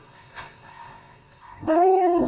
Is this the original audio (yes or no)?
no